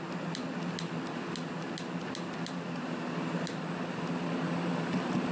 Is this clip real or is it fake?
real